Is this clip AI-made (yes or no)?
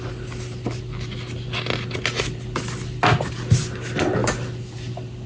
no